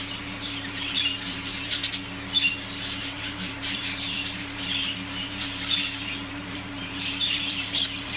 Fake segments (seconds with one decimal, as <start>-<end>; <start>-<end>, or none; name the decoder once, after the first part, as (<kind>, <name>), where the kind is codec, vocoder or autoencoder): 0.0-1.8 (vocoder, BigVGAN v2); 3.0-8.2